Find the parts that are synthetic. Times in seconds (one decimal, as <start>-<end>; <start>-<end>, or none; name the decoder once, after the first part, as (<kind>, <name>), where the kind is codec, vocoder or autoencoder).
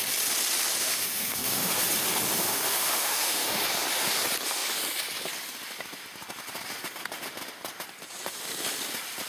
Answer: 0.8-1.8 (autoencoder, DAC-VAE); 2.4-3.6